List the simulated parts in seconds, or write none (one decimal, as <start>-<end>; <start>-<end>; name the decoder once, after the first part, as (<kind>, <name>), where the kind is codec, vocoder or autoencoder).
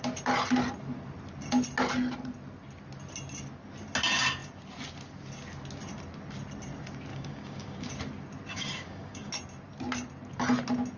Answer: 7.1-7.9 (codec, DAC); 8.5-9.3